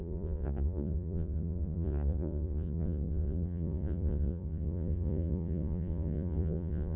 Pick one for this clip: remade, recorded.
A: remade